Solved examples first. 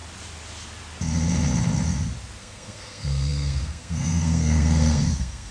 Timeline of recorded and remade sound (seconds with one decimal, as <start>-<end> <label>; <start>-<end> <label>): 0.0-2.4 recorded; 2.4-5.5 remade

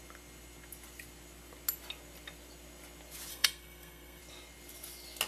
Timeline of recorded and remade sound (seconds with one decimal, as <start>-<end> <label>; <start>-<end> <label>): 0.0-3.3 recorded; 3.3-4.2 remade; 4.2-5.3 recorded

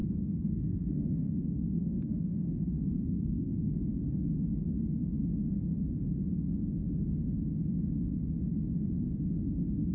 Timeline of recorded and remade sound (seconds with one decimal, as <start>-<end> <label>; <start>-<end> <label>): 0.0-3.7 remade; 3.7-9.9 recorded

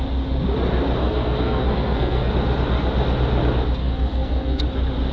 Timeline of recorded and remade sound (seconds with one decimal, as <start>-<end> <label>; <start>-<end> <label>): 0.0-1.0 recorded; 1.0-2.3 remade; 2.3-3.8 recorded; 3.8-4.6 remade; 4.6-5.1 recorded